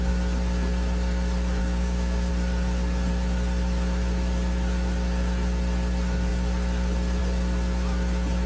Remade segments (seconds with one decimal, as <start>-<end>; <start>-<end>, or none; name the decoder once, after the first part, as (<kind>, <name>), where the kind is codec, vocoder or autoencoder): 1.6-2.3 (codec, DAC)